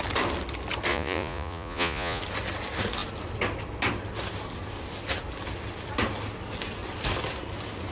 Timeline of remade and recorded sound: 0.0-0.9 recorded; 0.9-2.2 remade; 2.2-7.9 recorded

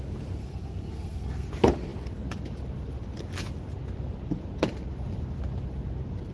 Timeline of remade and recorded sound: 0.0-0.4 recorded; 0.4-1.5 remade; 1.5-6.3 recorded

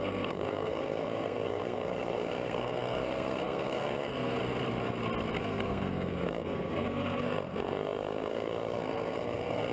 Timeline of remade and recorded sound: 0.0-4.4 remade; 4.4-5.4 recorded; 5.4-9.7 remade

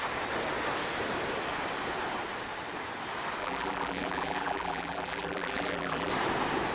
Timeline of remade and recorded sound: 0.0-3.4 recorded; 3.4-6.1 remade; 6.1-6.7 recorded

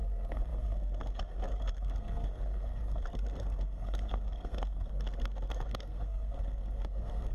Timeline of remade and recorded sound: 0.0-7.3 remade

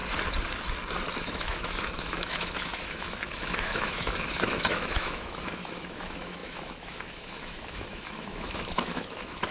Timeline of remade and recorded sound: 0.0-1.2 recorded; 1.2-9.5 remade